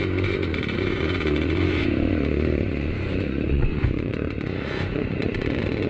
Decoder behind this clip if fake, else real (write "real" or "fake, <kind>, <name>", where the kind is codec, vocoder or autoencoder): fake, vocoder, Vocos